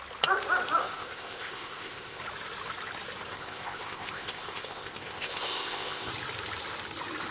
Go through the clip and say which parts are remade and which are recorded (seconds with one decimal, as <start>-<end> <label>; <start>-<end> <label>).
0.0-0.8 recorded; 0.8-2.2 remade; 2.2-3.3 recorded; 3.3-6.1 remade; 6.1-7.3 recorded